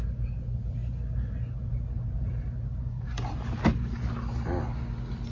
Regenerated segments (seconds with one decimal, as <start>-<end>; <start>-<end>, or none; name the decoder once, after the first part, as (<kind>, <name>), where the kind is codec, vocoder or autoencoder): none

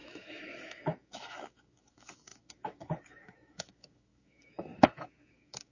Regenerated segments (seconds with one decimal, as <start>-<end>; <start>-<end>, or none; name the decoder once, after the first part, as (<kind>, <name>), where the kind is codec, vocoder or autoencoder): 0.0-5.7 (autoencoder, DAC-VAE)

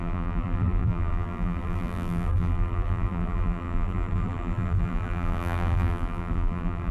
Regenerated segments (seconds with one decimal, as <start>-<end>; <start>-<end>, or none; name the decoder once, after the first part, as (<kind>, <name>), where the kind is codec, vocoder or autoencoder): 0.0-6.9 (vocoder, BigVGAN v2)

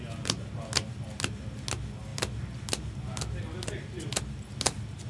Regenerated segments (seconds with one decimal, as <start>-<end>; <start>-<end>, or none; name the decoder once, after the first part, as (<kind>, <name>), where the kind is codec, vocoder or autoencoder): none

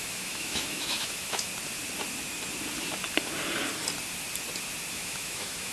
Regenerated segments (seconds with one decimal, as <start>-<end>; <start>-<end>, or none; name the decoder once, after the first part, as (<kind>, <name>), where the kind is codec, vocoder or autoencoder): 0.0-1.5 (autoencoder, DAC-VAE); 4.9-5.7

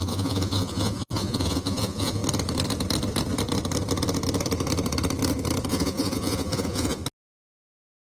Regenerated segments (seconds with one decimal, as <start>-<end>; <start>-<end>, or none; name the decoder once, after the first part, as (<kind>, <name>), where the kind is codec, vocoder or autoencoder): 0.0-2.2 (vocoder, Vocos); 5.7-7.0

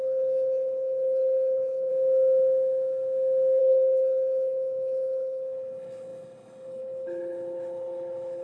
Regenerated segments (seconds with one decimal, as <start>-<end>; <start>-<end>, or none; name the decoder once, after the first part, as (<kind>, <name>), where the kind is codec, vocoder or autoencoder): 0.0-1.9 (codec, HILCodec); 3.6-8.4